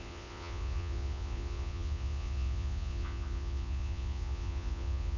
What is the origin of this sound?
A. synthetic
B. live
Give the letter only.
A